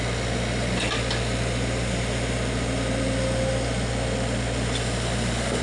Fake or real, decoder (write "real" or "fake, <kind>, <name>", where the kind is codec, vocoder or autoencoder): real